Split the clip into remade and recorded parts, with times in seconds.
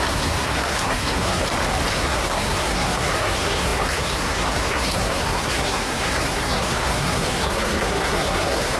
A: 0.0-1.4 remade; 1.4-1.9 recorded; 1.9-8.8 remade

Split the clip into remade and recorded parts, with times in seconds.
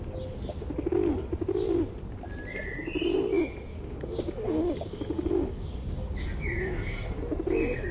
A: 0.0-3.7 recorded; 3.7-7.2 remade; 7.2-7.9 recorded